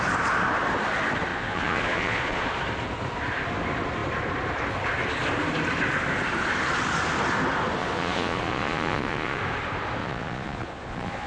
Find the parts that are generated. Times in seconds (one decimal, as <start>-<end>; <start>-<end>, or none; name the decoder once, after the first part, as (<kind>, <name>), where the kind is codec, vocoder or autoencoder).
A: 1.3-2.5 (vocoder, Vocos); 7.8-9.4; 10.0-11.3